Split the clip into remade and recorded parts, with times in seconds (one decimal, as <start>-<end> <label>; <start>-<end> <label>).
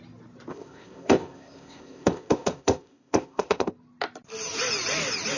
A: 0.0-0.5 recorded; 0.5-3.7 remade; 3.7-5.4 recorded